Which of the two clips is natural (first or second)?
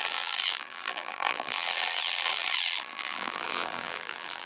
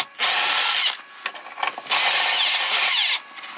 second